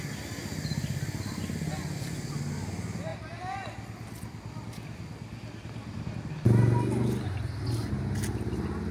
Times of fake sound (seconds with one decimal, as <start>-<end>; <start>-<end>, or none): none